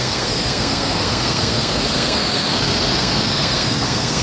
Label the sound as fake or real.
fake